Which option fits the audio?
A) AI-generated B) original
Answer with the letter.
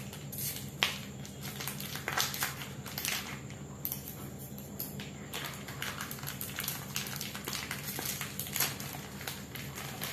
B